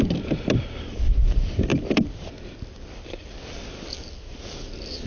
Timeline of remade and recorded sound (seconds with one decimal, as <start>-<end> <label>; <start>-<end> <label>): 0.0-5.1 recorded